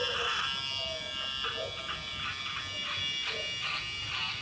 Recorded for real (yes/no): yes